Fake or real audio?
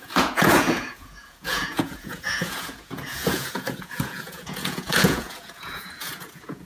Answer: fake